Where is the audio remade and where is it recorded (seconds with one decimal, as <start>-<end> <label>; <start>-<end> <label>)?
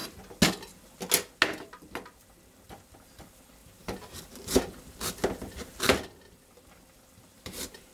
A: 0.0-3.6 recorded; 3.6-4.6 remade; 4.6-7.3 recorded; 7.3-7.9 remade